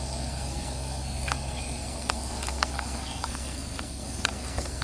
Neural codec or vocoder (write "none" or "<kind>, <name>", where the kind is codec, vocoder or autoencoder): codec, SNAC